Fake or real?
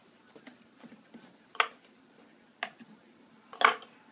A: real